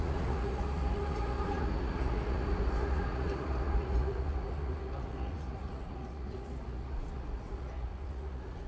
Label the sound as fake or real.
fake